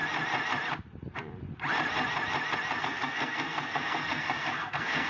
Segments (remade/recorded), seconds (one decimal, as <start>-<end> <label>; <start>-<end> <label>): 0.0-2.8 recorded; 2.8-5.1 remade